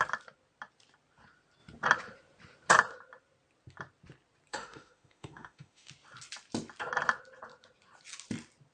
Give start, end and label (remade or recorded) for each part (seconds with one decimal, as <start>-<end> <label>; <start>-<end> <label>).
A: 0.0-4.5 recorded; 4.5-5.9 remade; 5.9-8.7 recorded